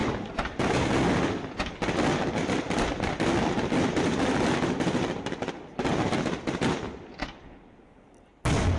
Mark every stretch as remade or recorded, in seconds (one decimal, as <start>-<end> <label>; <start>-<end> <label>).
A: 0.0-8.8 recorded